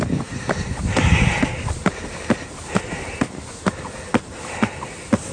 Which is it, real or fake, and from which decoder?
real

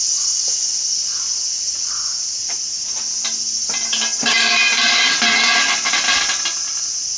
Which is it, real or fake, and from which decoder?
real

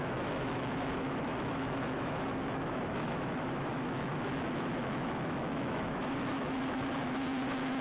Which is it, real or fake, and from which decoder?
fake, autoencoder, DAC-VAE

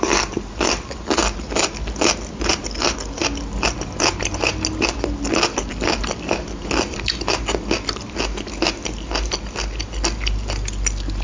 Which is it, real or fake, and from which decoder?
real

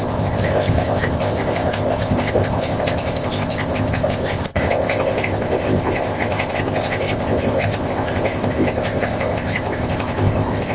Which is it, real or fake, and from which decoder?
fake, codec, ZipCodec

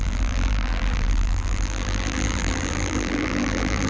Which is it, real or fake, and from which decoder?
fake, vocoder, BigVGAN v2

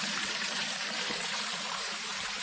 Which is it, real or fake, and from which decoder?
fake, vocoder, BigVGAN v2